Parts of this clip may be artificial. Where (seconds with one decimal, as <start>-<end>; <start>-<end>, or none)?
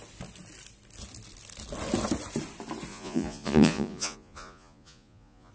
2.9-5.5